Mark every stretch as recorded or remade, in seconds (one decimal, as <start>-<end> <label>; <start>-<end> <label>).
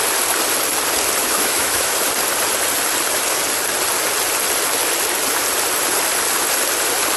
0.0-1.2 recorded; 1.2-2.1 remade; 2.1-7.2 recorded